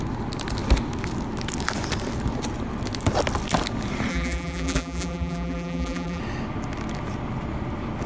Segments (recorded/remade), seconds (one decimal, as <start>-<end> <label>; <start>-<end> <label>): 0.0-4.1 recorded; 4.1-6.2 remade; 6.2-8.1 recorded